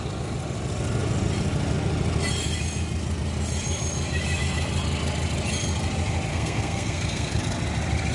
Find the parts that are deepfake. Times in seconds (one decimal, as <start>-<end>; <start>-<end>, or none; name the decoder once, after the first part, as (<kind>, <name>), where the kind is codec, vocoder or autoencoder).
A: 6.3-7.4 (codec, SNAC)